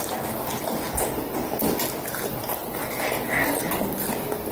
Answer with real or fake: real